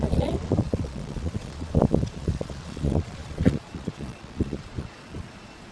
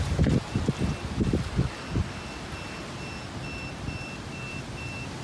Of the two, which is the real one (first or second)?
second